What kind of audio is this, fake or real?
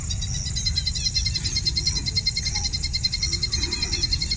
real